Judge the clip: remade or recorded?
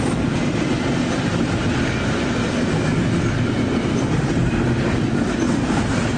recorded